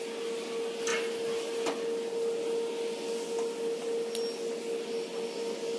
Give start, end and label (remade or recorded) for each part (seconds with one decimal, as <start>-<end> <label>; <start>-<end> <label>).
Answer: 0.0-5.8 recorded